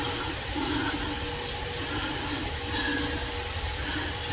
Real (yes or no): yes